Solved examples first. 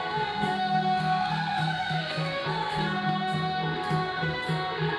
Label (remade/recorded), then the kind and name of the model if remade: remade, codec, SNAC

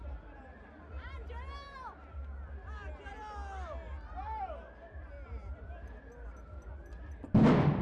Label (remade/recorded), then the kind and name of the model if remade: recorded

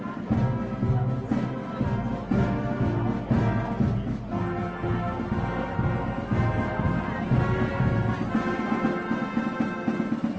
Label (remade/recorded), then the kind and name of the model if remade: recorded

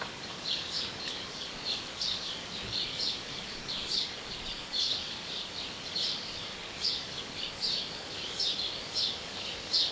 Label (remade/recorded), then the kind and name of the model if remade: remade, codec, DAC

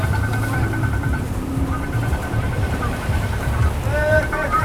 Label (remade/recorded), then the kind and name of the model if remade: remade, vocoder, BigVGAN v2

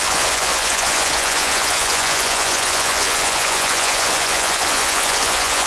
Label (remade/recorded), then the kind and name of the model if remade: remade, vocoder, Vocos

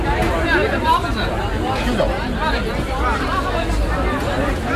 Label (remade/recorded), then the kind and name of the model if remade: recorded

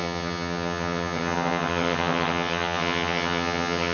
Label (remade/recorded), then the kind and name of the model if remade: remade, vocoder, HiFi-GAN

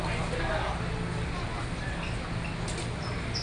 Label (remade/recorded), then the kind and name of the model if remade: recorded